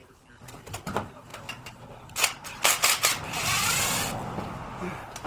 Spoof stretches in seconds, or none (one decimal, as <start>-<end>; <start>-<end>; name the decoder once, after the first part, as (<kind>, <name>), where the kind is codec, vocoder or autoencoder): 1.3-4.0 (vocoder, BigVGAN v2)